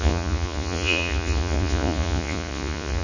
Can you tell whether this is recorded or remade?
remade